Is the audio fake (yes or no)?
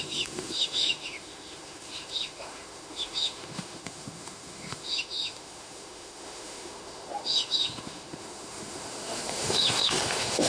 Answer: yes